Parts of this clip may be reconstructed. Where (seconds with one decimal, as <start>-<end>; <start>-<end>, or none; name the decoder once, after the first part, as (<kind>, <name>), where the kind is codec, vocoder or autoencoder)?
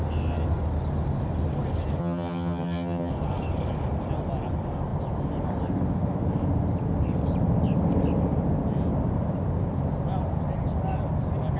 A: 2.0-3.1 (vocoder, HiFi-GAN)